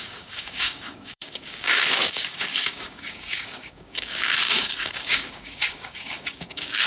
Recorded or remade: remade